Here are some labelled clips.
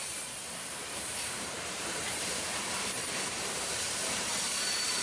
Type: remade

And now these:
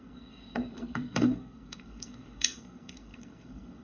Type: remade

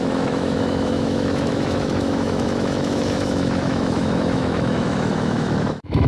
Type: remade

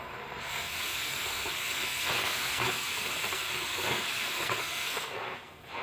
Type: remade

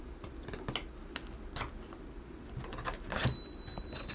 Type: recorded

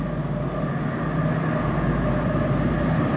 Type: recorded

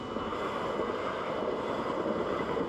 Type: recorded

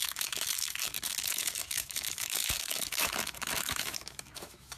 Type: remade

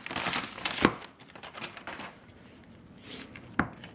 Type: recorded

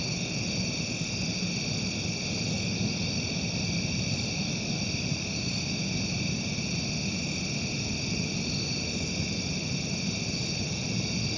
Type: recorded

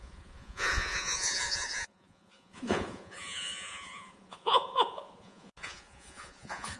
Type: remade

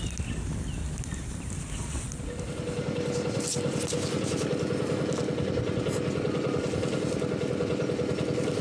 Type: recorded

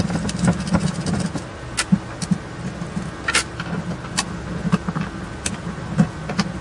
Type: recorded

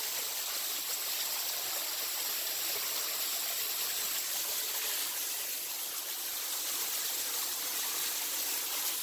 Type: recorded